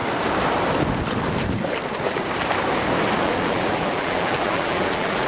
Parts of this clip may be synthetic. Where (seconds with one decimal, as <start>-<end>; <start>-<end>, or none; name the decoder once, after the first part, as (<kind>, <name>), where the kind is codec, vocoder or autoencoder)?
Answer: 3.2-5.3 (vocoder, BigVGAN v2)

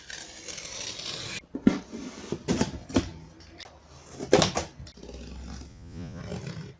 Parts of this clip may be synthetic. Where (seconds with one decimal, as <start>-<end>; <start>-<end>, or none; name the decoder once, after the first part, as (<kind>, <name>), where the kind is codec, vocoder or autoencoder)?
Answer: 5.7-6.2 (vocoder, Vocos)

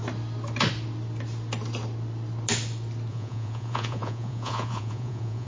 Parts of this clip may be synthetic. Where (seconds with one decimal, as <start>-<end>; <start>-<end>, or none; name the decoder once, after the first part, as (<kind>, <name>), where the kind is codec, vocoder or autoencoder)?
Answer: 3.1-5.5 (vocoder, Vocos)

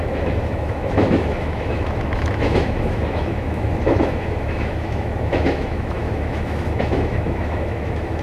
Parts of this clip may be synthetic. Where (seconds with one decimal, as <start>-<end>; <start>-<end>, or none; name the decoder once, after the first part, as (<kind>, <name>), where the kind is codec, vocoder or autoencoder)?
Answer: 0.0-8.2 (autoencoder, DAC-VAE)